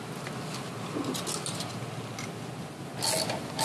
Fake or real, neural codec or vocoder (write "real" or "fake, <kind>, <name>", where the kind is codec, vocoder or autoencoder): real